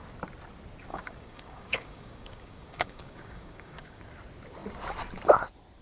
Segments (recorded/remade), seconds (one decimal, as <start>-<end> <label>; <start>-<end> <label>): 0.0-0.9 recorded; 0.9-4.0 remade; 4.0-5.8 recorded